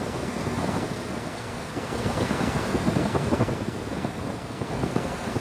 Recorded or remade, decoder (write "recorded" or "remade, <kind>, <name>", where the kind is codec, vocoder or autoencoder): remade, codec, SNAC